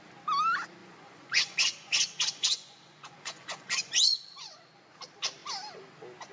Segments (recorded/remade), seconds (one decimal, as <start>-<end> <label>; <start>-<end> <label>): 0.0-0.8 recorded; 0.8-4.6 remade; 4.6-6.3 recorded